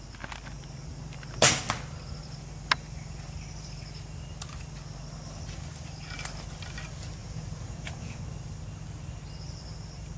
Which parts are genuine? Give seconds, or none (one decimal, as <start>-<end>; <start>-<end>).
0.0-7.2; 8.2-10.2